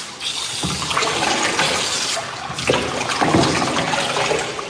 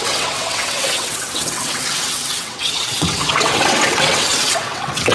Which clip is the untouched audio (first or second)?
first